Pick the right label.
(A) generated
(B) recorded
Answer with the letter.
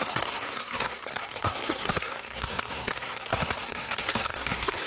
A